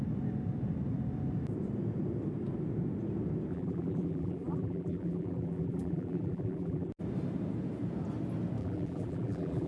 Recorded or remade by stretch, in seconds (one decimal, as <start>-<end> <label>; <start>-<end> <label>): 0.0-3.5 recorded; 3.5-6.9 remade; 6.9-8.6 recorded; 8.6-9.7 remade